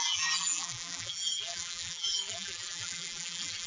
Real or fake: fake